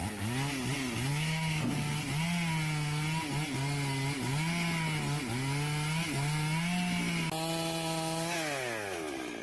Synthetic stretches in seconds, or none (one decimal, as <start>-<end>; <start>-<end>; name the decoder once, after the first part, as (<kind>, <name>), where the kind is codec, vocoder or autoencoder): 1.1-1.6 (autoencoder, DAC-VAE)